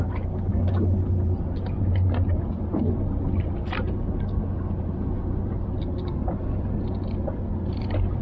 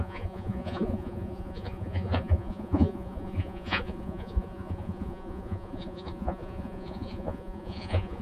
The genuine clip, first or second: first